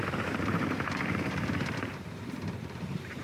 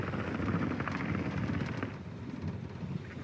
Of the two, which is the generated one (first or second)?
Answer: first